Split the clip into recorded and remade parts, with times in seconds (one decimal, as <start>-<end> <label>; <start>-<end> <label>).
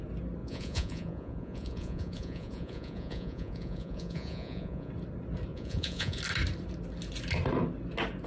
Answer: 0.0-0.4 recorded; 0.4-4.9 remade; 4.9-5.5 recorded; 5.5-6.2 remade; 6.2-8.3 recorded